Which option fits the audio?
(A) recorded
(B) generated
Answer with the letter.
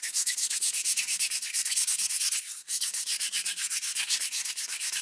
B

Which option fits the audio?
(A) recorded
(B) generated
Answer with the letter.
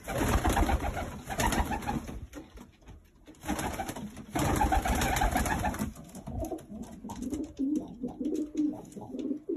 A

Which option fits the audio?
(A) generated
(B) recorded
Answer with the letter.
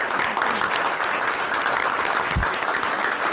B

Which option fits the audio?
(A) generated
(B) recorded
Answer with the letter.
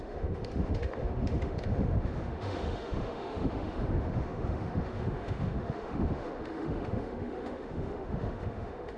A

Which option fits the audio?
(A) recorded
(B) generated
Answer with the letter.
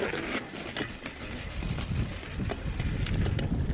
A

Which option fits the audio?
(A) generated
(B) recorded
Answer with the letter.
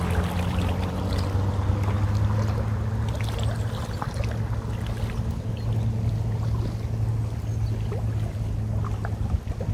B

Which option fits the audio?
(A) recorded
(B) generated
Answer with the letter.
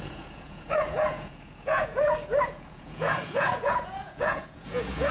B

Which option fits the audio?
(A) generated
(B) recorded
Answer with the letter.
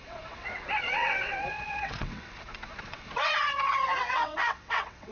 A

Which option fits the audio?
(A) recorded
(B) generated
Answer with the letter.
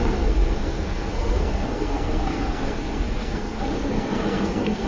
B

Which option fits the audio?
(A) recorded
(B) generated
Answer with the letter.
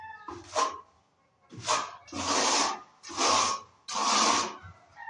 A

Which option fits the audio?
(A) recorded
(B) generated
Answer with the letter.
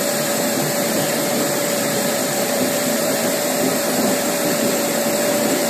B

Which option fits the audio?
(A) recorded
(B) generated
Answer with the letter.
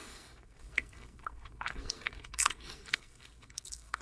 B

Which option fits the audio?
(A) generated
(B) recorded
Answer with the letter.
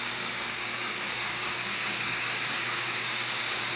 A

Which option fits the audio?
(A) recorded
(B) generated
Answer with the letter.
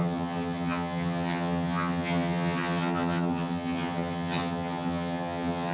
B